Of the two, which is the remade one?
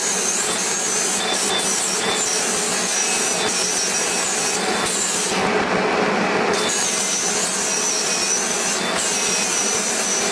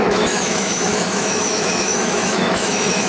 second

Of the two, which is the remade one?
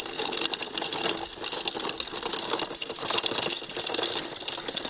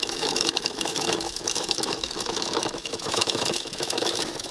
second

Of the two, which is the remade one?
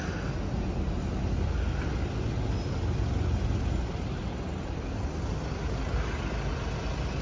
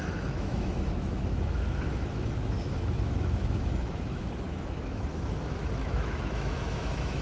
second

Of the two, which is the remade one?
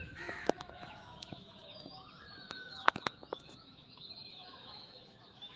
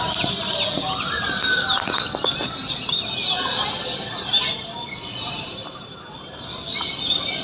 first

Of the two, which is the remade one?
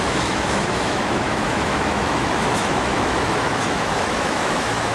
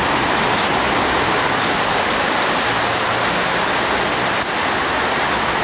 first